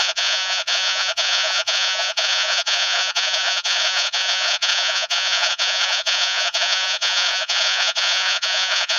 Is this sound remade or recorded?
remade